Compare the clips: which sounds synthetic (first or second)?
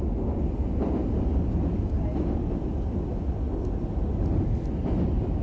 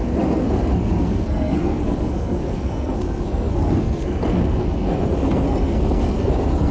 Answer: second